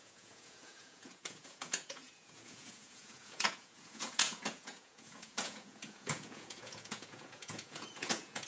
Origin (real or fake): fake